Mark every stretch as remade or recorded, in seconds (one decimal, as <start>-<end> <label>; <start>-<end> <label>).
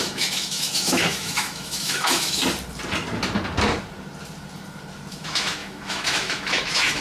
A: 0.0-2.4 remade; 2.4-5.1 recorded; 5.1-7.0 remade